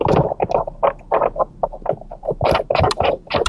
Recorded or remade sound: recorded